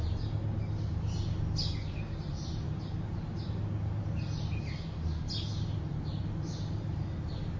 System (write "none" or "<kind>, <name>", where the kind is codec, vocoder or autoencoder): none